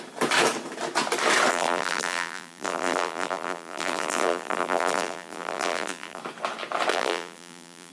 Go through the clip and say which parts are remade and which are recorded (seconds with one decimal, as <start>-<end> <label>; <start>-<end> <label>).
0.0-1.5 recorded; 1.5-6.2 remade; 6.2-6.9 recorded; 6.9-7.9 remade